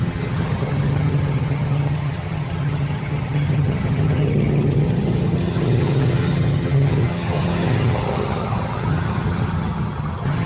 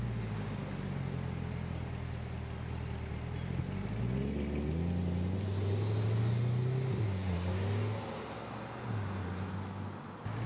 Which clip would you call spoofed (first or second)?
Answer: first